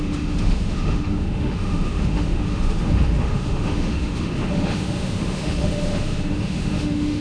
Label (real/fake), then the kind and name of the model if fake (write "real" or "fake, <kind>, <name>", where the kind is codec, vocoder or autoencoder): fake, autoencoder, DAC-VAE